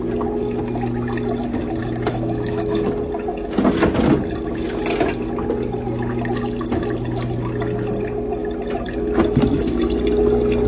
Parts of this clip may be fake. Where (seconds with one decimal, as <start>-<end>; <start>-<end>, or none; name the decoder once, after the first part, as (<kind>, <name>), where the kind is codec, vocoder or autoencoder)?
1.8-2.9 (autoencoder, DAC-VAE)